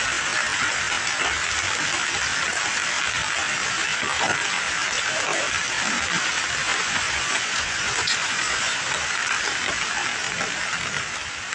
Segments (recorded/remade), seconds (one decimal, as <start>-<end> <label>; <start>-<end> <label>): 0.0-6.6 recorded; 6.6-8.8 remade; 8.8-11.5 recorded